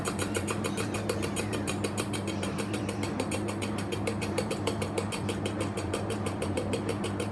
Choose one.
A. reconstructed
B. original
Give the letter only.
A